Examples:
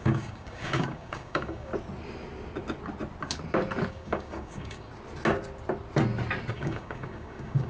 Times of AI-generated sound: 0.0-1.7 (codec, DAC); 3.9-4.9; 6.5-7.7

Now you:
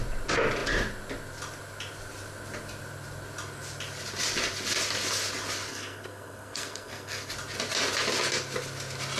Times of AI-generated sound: 5.7-7.3 (codec, SNAC)

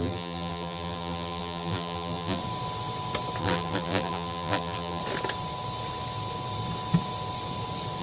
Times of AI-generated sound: 0.0-2.4 (vocoder, BigVGAN v2); 3.4-5.0